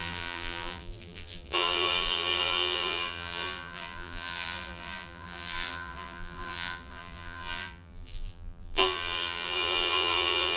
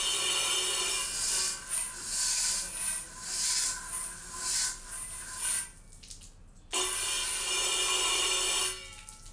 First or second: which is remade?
first